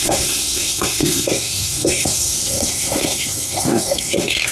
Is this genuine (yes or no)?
no